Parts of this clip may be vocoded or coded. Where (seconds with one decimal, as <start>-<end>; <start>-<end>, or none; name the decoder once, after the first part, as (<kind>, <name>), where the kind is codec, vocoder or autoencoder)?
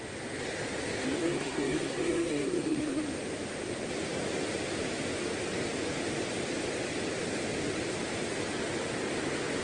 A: 1.2-3.0 (codec, SNAC)